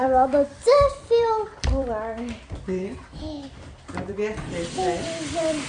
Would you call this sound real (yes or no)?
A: no